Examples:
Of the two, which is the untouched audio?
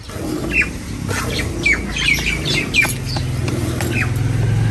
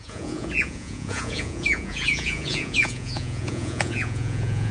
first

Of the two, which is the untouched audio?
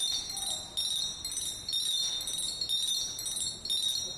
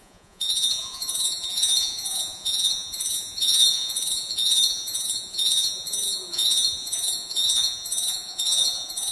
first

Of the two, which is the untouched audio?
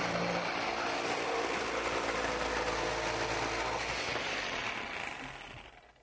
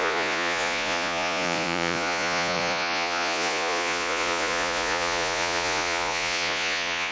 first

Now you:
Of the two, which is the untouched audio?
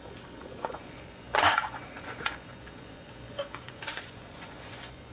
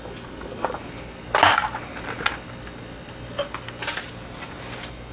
second